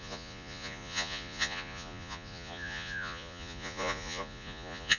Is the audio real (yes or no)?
no